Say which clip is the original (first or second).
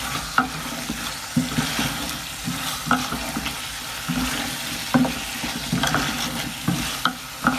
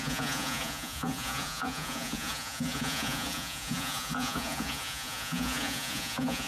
first